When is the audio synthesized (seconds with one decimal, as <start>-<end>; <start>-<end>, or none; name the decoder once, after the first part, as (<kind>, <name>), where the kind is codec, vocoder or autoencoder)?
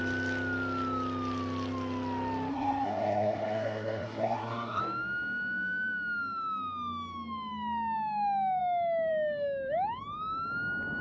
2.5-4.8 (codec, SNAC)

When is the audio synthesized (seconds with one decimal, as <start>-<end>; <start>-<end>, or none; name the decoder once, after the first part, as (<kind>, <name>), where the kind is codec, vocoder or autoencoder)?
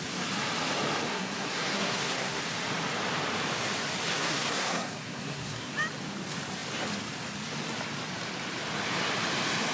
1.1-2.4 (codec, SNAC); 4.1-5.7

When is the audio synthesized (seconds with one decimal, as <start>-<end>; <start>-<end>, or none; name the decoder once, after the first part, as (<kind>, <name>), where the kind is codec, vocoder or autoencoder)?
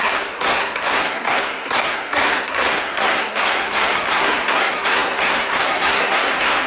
0.0-6.7 (codec, SNAC)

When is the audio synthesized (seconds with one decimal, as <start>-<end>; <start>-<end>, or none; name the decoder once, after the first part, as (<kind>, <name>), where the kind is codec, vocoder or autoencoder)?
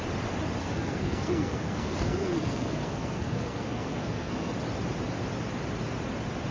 0.6-4.5 (codec, SNAC)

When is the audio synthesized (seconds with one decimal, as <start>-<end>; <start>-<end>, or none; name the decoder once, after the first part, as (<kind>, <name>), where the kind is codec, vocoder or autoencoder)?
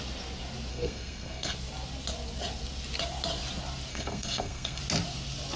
0.7-1.5 (codec, SNAC); 3.9-4.8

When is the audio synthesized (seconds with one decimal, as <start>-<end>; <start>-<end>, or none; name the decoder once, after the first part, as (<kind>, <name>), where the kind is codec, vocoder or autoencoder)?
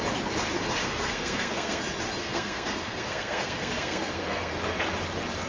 0.8-1.8 (codec, SNAC); 2.2-4.5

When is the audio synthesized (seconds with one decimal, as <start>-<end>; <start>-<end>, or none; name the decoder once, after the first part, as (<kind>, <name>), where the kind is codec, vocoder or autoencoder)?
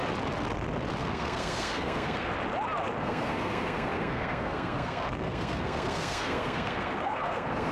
1.0-2.3 (codec, SNAC); 3.0-7.7